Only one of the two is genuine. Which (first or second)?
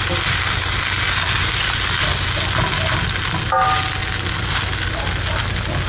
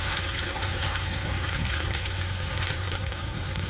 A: first